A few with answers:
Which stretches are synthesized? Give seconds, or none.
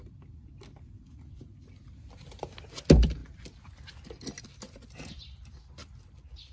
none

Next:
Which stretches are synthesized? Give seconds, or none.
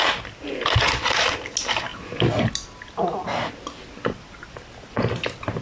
none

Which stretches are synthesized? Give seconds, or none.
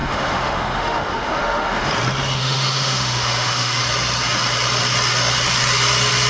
0.0-1.9 (autoencoder, DAC-VAE); 2.4-3.8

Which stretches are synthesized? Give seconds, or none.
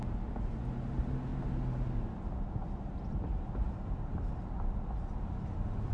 none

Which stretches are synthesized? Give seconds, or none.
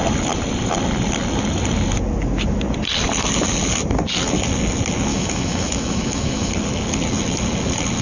5.1-6.5 (autoencoder, DAC-VAE)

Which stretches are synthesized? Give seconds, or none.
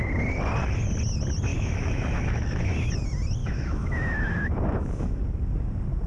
1.5-2.7 (autoencoder, DAC-VAE); 3.4-5.2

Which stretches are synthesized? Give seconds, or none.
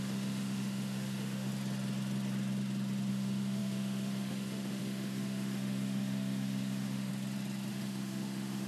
0.0-1.5 (autoencoder, DAC-VAE); 3.1-7.1; 7.7-8.7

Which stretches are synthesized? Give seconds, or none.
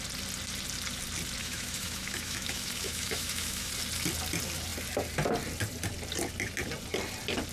1.4-3.7 (autoencoder, DAC-VAE)